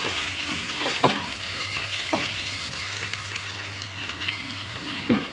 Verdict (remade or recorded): remade